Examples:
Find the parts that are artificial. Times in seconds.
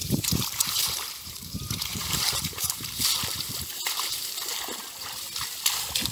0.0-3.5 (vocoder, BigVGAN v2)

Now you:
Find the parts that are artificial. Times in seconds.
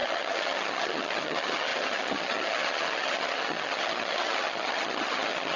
0.0-5.6 (vocoder, HiFi-GAN)